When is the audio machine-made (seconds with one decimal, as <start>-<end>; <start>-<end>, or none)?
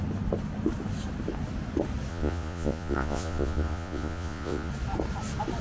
2.1-4.7